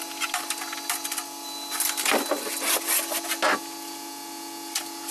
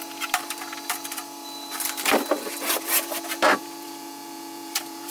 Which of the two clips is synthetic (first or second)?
second